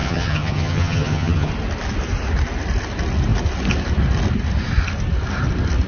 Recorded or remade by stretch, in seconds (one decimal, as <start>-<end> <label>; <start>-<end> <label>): 0.0-1.5 remade; 1.5-5.9 recorded